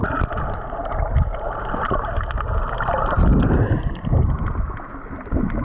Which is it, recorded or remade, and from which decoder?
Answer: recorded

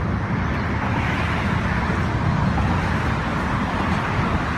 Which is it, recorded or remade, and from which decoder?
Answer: recorded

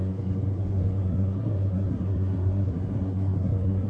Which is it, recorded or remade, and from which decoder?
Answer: remade, codec, SNAC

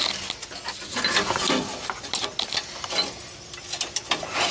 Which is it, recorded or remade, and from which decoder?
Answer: recorded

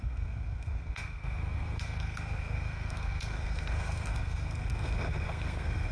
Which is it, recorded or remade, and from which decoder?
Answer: remade, codec, SNAC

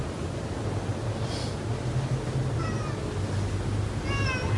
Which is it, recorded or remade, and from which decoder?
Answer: recorded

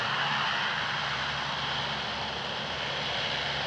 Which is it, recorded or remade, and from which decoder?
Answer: recorded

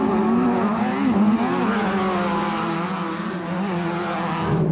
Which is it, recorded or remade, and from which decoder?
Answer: recorded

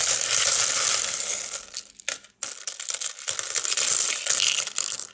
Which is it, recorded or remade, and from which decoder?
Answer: recorded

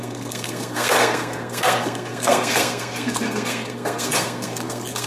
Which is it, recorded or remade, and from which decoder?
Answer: remade, codec, SNAC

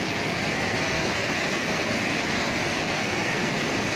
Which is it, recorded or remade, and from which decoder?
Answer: remade, codec, SNAC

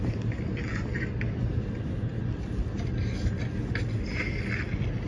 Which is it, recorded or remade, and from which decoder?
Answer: recorded